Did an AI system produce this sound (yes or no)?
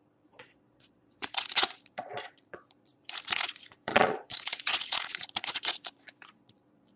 yes